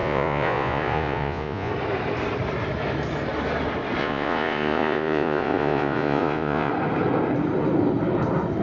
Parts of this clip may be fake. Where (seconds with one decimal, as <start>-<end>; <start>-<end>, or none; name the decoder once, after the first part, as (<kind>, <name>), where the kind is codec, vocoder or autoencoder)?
0.0-1.7 (vocoder, Vocos); 4.0-6.7